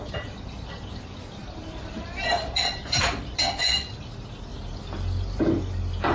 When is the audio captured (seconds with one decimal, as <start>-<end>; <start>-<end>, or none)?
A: 0.0-1.4; 3.1-6.1